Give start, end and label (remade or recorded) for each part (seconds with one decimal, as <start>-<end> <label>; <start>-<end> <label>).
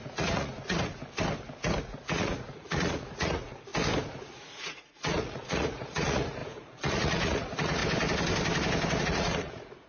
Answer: 0.0-1.0 remade; 1.0-1.8 recorded; 1.8-3.7 remade; 3.7-4.3 recorded; 4.3-7.8 remade; 7.8-9.0 recorded; 9.0-9.9 remade